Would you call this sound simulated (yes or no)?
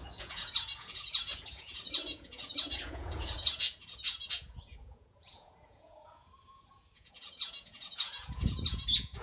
yes